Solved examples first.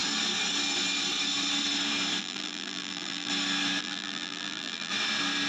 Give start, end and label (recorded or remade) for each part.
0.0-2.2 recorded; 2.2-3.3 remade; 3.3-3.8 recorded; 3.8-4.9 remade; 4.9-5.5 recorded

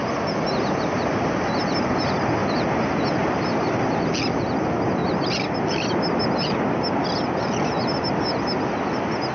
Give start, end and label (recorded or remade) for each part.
0.0-2.4 recorded; 2.4-3.0 remade; 3.0-9.3 recorded